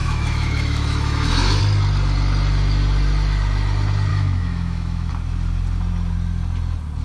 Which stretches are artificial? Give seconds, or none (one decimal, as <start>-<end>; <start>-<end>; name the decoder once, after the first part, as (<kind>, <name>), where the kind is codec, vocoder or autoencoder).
0.0-1.6 (autoencoder, DAC-VAE); 4.1-5.1